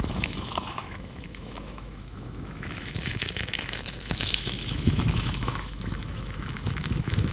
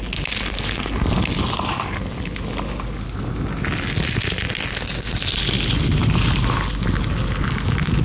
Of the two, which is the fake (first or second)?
first